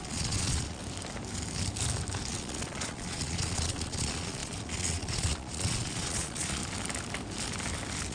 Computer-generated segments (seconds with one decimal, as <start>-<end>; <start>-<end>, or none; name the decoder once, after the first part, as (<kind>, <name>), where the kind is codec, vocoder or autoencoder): 0.0-0.8 (vocoder, Vocos); 2.3-6.6